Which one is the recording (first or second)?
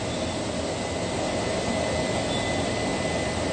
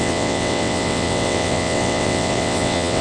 first